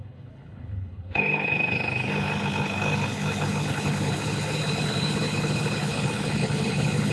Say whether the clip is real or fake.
fake